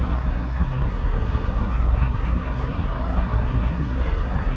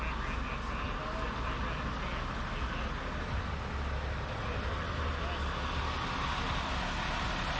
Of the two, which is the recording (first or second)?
second